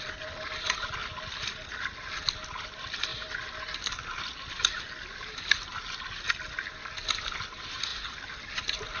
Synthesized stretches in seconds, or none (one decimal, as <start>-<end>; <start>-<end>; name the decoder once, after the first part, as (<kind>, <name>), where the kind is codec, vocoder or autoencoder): none